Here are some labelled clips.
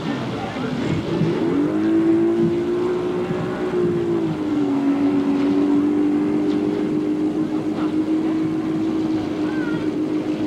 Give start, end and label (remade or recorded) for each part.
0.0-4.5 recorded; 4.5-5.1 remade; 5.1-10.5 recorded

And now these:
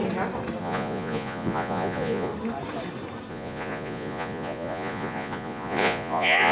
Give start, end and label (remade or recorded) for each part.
0.0-0.6 recorded; 0.6-2.3 remade; 2.3-3.3 recorded; 3.3-6.5 remade

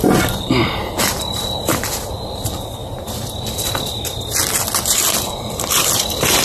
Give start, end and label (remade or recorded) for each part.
0.0-0.8 remade; 0.8-1.7 recorded; 1.7-2.8 remade; 2.8-4.8 recorded; 4.8-6.4 remade

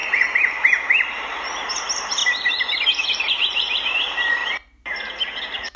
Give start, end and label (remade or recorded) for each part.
0.0-1.1 recorded; 1.1-2.2 remade; 2.2-3.4 recorded; 3.4-4.4 remade; 4.4-5.8 recorded

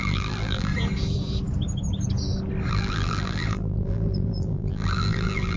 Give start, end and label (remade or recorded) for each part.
0.0-0.7 remade; 0.7-2.7 recorded; 2.7-5.6 remade

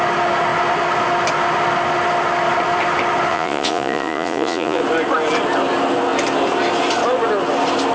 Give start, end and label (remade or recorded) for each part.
0.0-3.3 recorded; 3.3-4.8 remade; 4.8-7.9 recorded

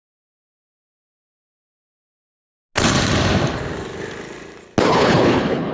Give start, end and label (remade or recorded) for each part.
0.0-4.9 recorded; 4.9-5.7 remade

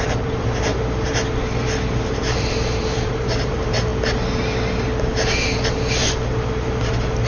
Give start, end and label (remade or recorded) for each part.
0.0-0.7 remade; 0.7-2.1 recorded; 2.1-3.9 remade; 3.9-7.3 recorded